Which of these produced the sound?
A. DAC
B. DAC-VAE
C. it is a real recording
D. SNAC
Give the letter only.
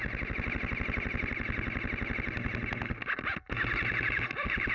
C